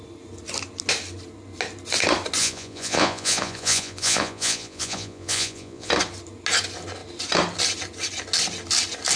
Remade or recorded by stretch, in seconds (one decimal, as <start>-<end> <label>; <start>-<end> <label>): 0.0-2.4 recorded; 2.4-5.9 remade; 5.9-9.2 recorded